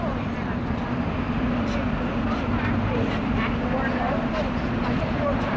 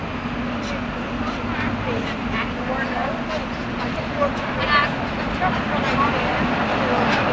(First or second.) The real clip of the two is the second